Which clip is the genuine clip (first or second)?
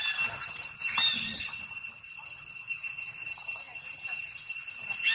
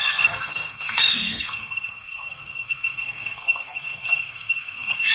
first